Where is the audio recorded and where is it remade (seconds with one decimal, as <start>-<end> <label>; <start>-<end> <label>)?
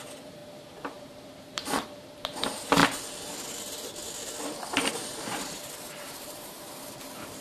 0.0-2.8 remade; 2.8-4.9 recorded; 4.9-7.4 remade